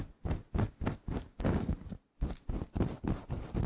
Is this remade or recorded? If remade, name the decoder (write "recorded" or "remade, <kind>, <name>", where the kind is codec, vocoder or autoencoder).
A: recorded